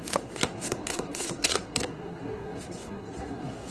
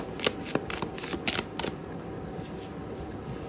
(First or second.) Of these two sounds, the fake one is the first